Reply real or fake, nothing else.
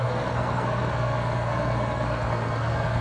fake